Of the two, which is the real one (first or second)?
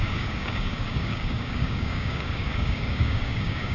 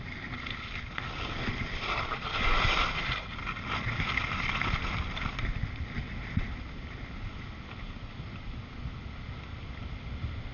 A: second